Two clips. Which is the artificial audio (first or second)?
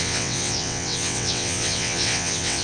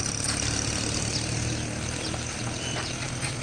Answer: first